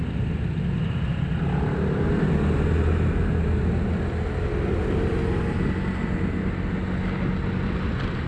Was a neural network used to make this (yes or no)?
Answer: no